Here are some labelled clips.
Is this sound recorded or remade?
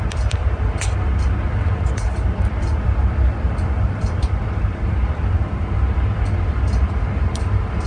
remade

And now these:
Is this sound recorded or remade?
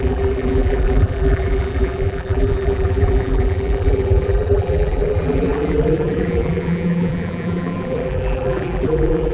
remade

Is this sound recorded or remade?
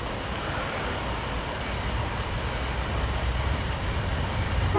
remade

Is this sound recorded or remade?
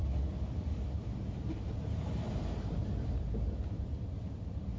remade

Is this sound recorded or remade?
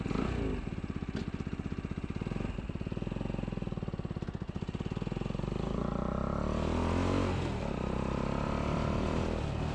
recorded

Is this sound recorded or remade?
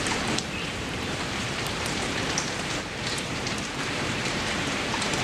remade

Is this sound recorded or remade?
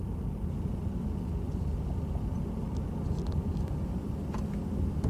recorded